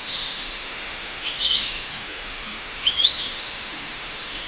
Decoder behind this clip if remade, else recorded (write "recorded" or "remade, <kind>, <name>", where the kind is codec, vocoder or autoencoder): remade, autoencoder, DAC-VAE